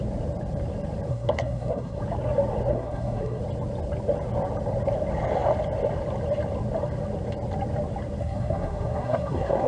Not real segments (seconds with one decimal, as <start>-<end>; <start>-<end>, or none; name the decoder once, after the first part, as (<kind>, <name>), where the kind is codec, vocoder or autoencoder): 1.1-2.0 (codec, SNAC); 2.7-3.4; 8.2-9.7